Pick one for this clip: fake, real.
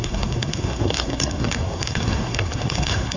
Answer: fake